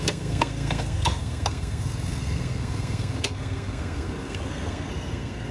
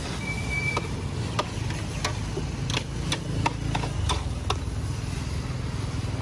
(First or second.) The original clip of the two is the second